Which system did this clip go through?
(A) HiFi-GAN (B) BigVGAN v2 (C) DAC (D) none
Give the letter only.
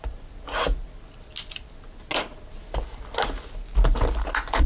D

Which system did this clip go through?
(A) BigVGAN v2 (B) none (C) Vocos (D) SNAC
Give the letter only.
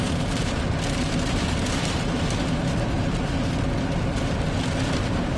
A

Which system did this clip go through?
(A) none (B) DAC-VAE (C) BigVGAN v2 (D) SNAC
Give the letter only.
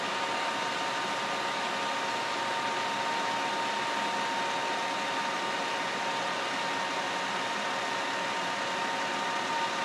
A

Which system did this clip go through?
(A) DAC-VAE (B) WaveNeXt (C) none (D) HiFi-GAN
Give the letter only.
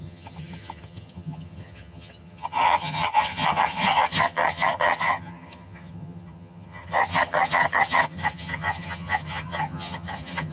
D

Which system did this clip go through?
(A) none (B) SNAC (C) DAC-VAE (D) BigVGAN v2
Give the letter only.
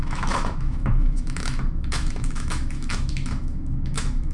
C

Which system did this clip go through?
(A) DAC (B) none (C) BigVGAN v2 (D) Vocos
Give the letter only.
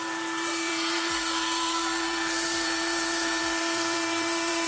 C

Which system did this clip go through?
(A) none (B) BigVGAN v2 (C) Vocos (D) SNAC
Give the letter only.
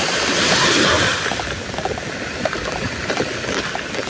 A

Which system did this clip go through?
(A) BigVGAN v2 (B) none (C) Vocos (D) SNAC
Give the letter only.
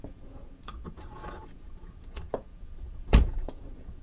C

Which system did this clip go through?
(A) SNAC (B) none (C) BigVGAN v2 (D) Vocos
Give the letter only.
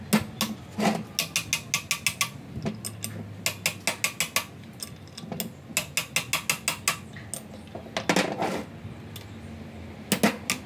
B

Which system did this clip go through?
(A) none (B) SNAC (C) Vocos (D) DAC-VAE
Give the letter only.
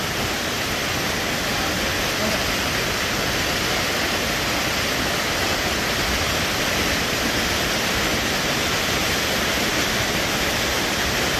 A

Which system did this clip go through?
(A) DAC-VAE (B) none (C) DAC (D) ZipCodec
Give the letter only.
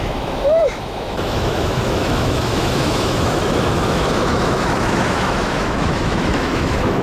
A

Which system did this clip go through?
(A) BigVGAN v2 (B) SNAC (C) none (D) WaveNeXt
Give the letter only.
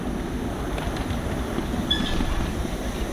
C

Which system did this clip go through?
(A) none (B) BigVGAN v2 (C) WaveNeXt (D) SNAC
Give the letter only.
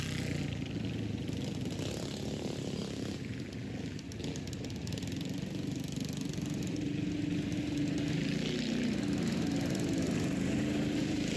A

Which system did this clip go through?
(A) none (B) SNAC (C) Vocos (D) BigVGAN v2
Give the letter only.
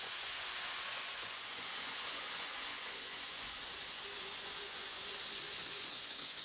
C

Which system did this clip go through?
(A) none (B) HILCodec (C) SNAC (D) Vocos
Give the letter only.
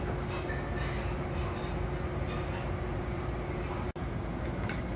A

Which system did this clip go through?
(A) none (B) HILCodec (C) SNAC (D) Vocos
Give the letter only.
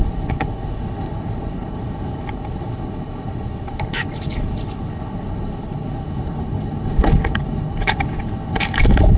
B